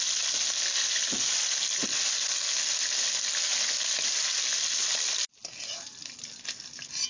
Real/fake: real